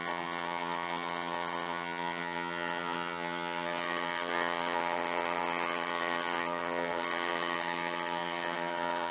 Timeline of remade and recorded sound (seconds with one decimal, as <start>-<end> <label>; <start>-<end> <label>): 0.0-9.1 remade